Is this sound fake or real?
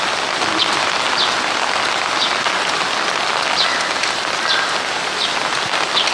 real